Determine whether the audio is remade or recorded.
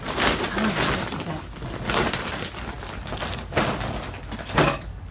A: recorded